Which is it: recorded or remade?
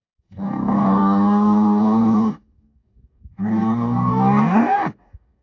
remade